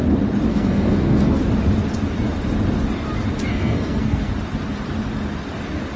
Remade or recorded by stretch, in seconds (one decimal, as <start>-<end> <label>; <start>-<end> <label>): 0.0-0.5 recorded; 0.5-1.4 remade; 1.4-3.5 recorded; 3.5-4.3 remade; 4.3-6.0 recorded